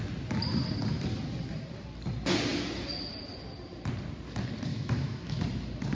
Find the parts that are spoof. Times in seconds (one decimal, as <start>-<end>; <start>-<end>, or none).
4.7-5.4